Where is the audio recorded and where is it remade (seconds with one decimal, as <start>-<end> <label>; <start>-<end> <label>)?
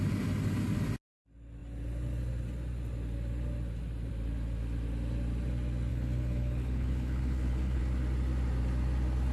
0.0-5.9 recorded; 5.9-7.8 remade; 7.8-9.3 recorded